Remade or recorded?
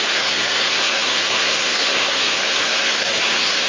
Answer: remade